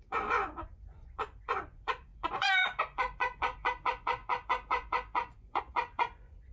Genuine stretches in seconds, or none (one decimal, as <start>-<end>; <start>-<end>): none